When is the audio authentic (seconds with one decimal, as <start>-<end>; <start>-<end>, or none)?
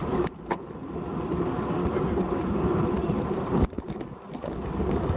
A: 1.3-3.0; 4.7-5.2